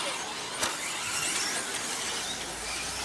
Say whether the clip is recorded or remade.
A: recorded